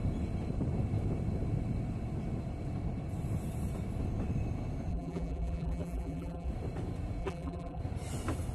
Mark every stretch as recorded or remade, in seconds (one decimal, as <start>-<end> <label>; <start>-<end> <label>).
0.0-4.9 recorded; 4.9-6.5 remade; 6.5-7.2 recorded; 7.2-7.8 remade; 7.8-8.5 recorded